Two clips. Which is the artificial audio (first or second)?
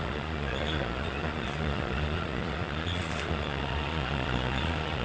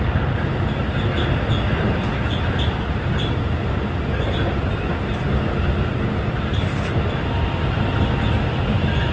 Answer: first